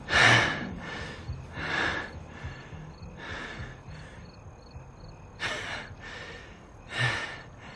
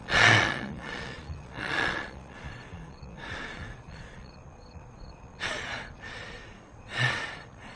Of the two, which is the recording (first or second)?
first